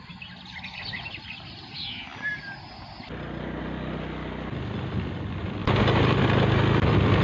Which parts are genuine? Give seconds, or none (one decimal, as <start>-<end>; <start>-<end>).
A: 0.0-5.6; 6.2-7.2